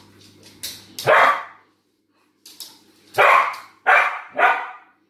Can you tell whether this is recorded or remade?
recorded